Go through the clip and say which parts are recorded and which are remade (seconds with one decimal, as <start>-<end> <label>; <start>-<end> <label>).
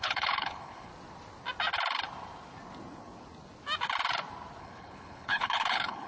0.0-0.9 remade; 0.9-4.6 recorded; 4.6-6.1 remade